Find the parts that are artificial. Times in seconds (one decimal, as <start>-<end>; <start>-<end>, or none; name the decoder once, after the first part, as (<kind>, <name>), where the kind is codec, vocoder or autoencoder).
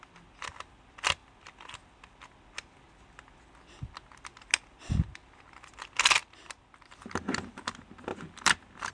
8.1-8.9 (vocoder, BigVGAN v2)